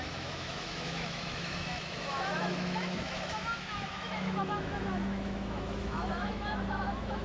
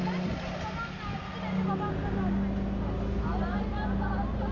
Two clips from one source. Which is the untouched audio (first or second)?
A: second